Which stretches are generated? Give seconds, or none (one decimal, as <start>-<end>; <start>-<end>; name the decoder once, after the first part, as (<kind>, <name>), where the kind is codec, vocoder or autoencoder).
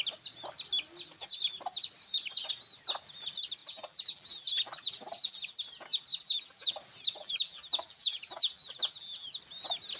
3.6-5.6 (vocoder, BigVGAN v2); 6.1-6.7; 7.2-9.3